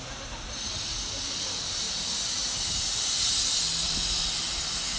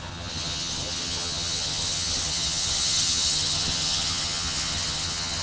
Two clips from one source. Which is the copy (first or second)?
second